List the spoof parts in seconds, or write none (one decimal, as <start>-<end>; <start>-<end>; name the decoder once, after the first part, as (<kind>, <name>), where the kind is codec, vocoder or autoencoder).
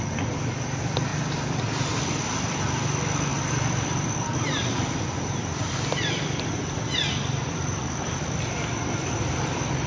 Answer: 0.0-1.1 (vocoder, BigVGAN v2); 1.6-9.9